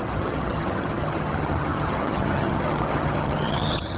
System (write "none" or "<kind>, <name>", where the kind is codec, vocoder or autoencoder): vocoder, HiFi-GAN